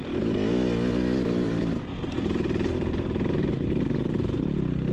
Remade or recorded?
recorded